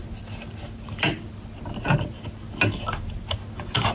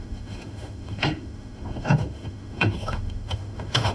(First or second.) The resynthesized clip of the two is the second